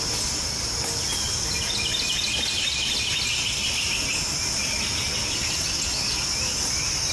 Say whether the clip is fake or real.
real